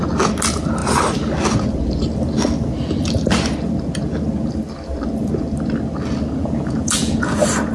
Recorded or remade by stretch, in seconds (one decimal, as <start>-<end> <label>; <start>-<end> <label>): 0.0-6.4 recorded; 6.4-7.2 remade; 7.2-7.7 recorded